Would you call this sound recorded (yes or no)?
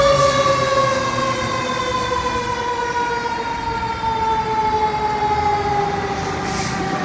yes